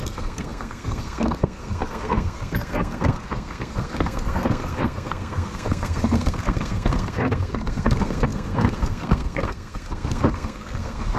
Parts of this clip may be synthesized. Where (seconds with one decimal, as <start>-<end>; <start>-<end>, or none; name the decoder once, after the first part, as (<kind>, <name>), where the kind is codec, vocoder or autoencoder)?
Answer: 0.0-11.2 (codec, SNAC)

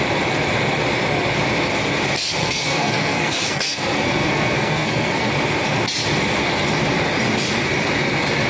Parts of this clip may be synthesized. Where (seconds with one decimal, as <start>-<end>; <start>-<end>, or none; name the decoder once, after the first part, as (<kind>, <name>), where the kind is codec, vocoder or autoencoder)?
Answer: 2.4-5.3 (codec, SNAC)

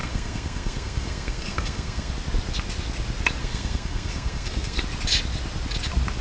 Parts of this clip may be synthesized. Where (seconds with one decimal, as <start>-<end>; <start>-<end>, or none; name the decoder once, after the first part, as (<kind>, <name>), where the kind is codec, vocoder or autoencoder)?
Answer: 0.0-2.1 (codec, SNAC); 3.4-4.8

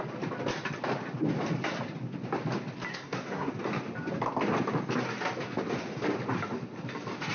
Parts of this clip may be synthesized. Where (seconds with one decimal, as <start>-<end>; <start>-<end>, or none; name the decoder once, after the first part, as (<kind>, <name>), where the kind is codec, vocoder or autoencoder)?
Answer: 2.9-3.5 (codec, SNAC)

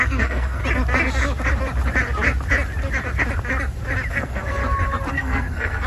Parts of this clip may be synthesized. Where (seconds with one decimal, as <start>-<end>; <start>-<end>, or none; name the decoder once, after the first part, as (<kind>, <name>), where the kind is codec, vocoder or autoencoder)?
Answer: 0.0-0.6 (codec, SNAC); 4.1-4.6; 5.1-5.9

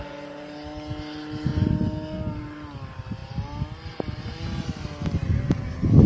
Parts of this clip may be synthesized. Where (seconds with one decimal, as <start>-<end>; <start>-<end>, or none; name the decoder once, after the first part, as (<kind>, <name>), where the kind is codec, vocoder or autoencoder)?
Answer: none

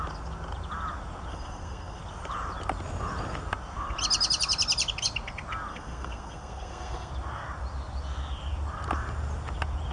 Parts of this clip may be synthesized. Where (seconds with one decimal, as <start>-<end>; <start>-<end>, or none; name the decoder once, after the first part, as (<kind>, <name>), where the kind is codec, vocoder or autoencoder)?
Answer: 1.3-2.0 (codec, SNAC); 5.7-7.1

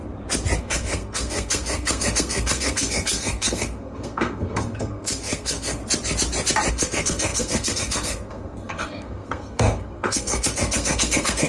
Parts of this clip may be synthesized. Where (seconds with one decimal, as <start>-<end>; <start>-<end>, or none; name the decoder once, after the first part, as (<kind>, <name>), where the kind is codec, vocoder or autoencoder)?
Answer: 0.6-5.8 (codec, SNAC); 6.7-11.5